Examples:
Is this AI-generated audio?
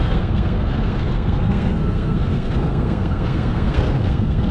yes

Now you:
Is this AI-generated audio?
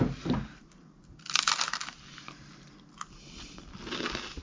no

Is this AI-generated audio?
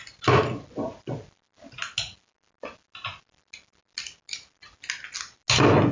no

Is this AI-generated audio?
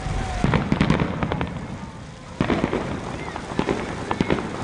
no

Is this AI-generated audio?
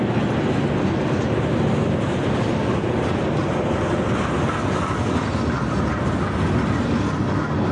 no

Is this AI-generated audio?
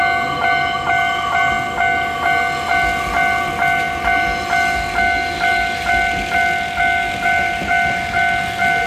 no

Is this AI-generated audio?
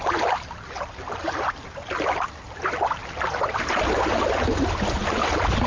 no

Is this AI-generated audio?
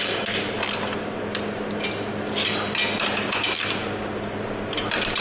no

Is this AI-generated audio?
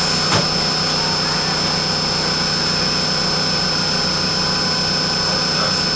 no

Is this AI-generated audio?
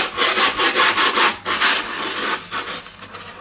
no